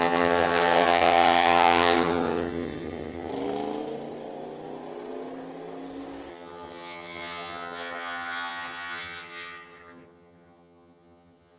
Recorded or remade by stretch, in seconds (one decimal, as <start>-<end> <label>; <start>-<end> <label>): 0.0-3.3 remade; 3.3-6.3 recorded; 6.3-11.6 remade